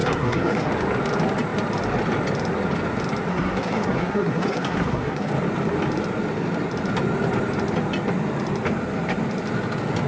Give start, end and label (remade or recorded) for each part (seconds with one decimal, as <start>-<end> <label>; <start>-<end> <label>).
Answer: 0.0-0.7 remade; 0.7-3.3 recorded; 3.3-5.3 remade; 5.3-10.1 recorded